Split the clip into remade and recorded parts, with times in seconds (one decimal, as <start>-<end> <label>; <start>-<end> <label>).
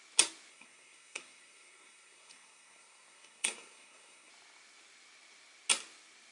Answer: 0.0-0.5 recorded; 0.5-4.3 remade; 4.3-6.3 recorded